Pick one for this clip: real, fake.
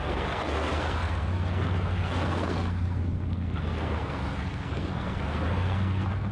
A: fake